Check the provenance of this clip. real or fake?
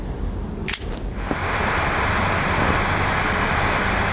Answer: real